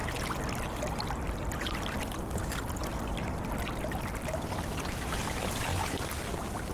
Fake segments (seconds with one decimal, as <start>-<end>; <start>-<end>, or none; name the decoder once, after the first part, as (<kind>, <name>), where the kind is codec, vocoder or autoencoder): none